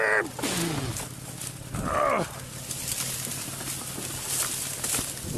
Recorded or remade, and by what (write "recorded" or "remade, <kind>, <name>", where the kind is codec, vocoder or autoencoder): recorded